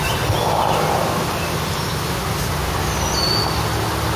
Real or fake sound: real